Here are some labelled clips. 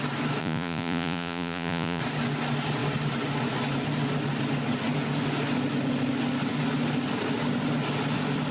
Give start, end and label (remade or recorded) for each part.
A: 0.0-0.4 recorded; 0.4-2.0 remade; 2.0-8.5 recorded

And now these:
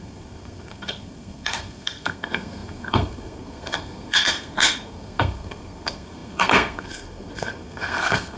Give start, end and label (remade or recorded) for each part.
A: 0.0-8.4 remade

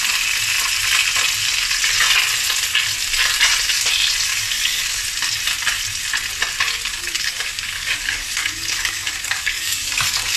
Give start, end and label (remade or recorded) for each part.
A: 0.0-4.3 recorded; 4.3-5.0 remade; 5.0-6.8 recorded; 6.8-10.4 remade